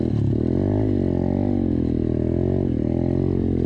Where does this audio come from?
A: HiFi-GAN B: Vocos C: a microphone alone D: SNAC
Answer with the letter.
C